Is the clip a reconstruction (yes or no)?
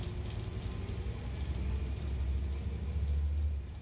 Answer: no